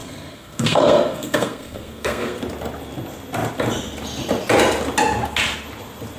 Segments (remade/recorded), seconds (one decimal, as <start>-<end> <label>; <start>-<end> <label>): 0.0-2.4 remade; 2.4-6.2 recorded